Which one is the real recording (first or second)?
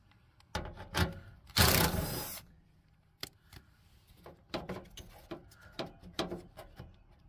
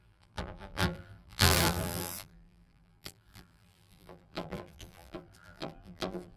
first